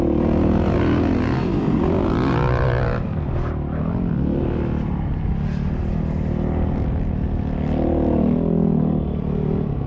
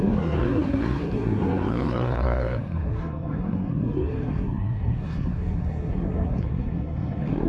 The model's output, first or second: second